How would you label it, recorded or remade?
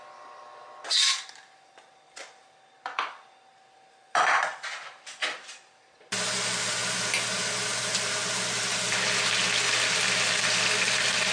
recorded